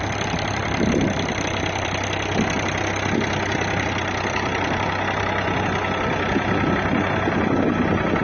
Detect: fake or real real